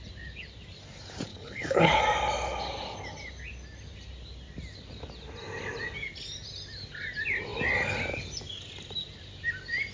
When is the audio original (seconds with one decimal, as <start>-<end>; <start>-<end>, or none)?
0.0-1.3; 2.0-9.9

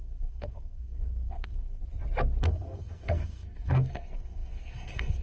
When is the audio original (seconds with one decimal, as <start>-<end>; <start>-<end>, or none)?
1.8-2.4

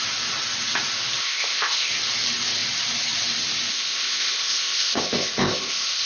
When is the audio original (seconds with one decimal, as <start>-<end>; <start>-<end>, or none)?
0.0-1.2; 1.9-3.7

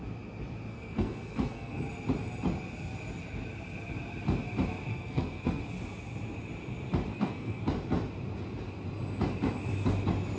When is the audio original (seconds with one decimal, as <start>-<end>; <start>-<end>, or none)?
0.0-0.7; 1.8-4.9; 5.6-7.1; 7.6-10.4

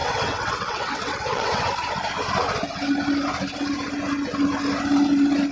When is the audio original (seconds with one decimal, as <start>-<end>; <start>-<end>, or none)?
1.7-5.5

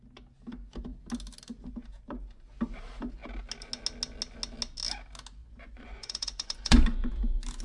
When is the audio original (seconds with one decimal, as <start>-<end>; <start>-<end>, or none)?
0.0-5.4; 7.1-7.6

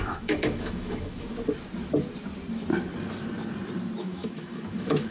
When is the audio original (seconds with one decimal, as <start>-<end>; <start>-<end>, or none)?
1.3-4.0

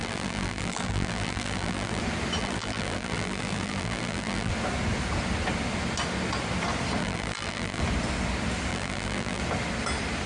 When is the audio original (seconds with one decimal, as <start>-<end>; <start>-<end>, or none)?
2.0-2.4; 4.5-7.0; 7.8-8.7; 9.4-10.3